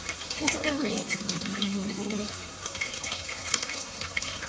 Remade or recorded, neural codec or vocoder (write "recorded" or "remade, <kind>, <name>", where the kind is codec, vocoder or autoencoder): remade, codec, SNAC